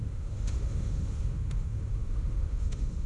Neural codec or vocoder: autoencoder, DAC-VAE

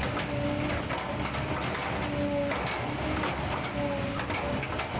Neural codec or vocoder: none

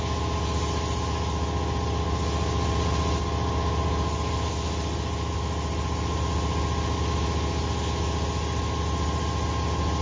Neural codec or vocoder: none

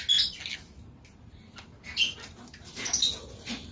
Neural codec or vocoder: none